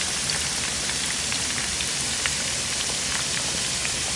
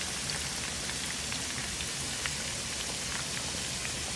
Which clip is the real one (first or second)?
second